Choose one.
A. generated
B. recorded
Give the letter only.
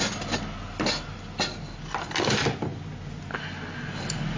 B